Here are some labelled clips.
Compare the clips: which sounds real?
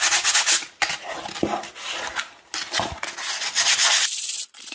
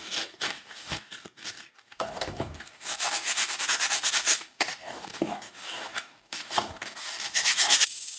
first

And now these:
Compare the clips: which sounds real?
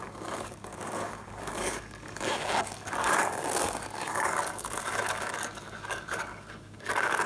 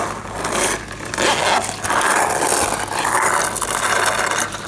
second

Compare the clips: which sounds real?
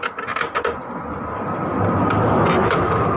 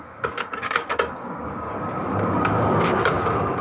first